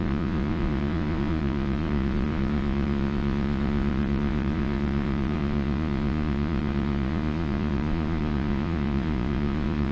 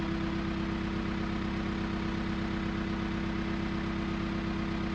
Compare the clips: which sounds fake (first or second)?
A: first